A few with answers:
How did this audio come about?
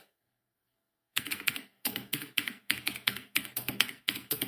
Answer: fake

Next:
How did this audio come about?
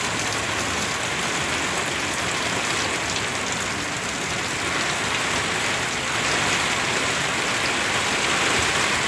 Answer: real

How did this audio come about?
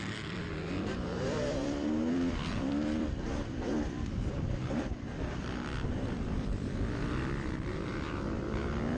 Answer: fake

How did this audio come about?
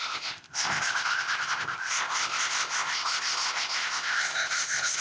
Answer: fake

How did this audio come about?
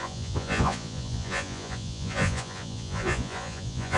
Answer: fake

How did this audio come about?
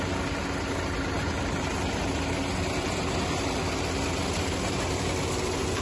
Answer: real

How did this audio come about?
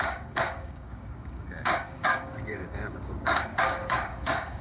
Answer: fake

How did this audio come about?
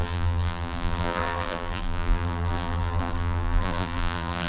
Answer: fake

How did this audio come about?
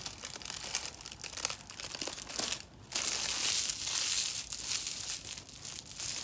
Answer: real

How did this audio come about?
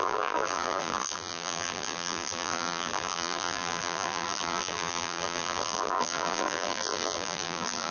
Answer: fake